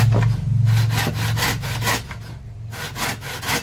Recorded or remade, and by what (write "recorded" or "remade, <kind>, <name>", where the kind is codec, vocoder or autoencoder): recorded